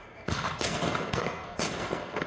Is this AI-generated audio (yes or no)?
yes